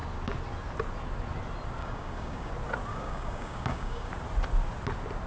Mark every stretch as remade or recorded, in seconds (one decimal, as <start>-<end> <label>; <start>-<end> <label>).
0.0-1.8 recorded; 1.8-2.5 remade; 2.5-2.9 recorded; 2.9-4.1 remade; 4.1-5.3 recorded